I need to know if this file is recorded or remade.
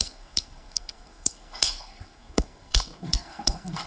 remade